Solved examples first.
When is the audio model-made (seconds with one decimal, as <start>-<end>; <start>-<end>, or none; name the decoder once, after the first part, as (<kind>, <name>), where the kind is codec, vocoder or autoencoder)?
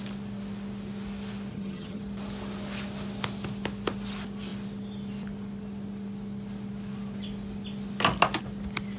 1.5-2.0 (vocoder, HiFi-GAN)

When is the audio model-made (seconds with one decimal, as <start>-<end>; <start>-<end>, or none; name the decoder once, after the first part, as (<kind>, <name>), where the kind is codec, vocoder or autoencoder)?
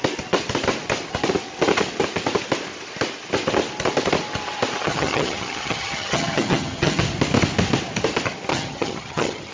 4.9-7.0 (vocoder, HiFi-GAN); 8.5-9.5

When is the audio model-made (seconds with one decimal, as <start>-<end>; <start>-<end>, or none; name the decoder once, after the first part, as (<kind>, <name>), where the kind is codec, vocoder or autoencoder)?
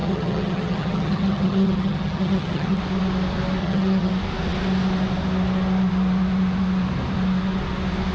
0.0-2.8 (vocoder, HiFi-GAN); 3.6-4.1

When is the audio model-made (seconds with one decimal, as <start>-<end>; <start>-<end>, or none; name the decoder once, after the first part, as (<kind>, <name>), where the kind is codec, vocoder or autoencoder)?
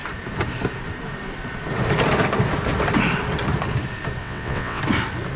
4.2-4.8 (vocoder, WaveNeXt)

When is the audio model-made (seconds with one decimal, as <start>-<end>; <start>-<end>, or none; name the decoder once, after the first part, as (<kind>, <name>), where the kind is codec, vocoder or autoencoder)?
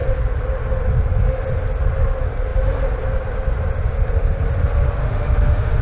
5.0-5.8 (autoencoder, DAC-VAE)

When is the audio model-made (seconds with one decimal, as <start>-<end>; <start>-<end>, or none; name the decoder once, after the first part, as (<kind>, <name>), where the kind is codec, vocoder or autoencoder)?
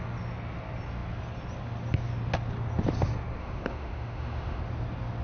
3.4-4.6 (autoencoder, DAC-VAE)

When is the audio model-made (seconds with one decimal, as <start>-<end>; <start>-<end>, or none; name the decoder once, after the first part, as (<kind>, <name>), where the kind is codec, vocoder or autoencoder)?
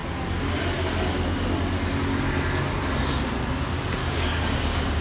4.0-5.0 (codec, DAC)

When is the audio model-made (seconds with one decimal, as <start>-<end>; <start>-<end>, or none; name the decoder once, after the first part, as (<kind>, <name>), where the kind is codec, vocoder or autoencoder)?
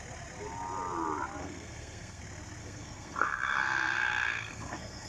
1.4-2.2 (codec, SNAC); 2.6-5.1